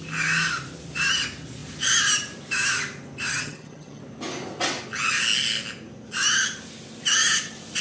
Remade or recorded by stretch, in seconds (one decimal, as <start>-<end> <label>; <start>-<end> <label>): 0.0-3.3 recorded; 3.3-4.0 remade; 4.0-7.8 recorded